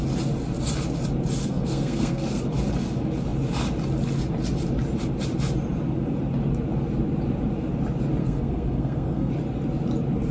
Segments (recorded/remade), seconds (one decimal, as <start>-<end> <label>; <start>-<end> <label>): 0.0-1.4 recorded; 1.4-2.4 remade; 2.4-8.2 recorded; 8.2-9.3 remade; 9.3-10.3 recorded